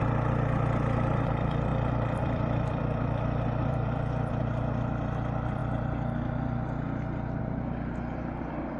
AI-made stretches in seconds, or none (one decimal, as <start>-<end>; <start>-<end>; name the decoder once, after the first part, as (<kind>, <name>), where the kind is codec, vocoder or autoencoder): 1.7-4.3 (vocoder, BigVGAN v2)

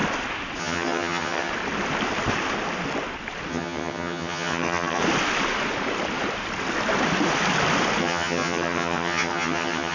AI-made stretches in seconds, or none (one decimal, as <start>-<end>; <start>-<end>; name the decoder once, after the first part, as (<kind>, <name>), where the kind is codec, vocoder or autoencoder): 0.6-1.5 (vocoder, HiFi-GAN); 3.5-5.0; 8.0-9.9

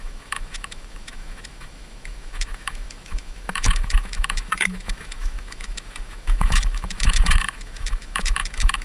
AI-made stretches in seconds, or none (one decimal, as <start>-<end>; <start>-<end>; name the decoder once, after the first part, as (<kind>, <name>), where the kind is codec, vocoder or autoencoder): 0.0-8.8 (autoencoder, DAC-VAE)

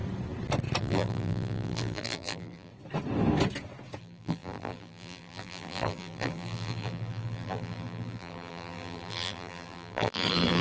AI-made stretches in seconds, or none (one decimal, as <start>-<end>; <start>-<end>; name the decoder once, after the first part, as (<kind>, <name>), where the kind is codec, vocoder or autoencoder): 0.8-2.7 (vocoder, BigVGAN v2); 4.0-10.6

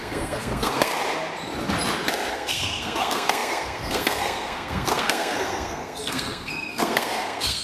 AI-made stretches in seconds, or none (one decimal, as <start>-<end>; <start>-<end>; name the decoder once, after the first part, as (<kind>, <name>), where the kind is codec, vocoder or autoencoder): 0.0-0.9 (codec, SNAC); 2.3-7.6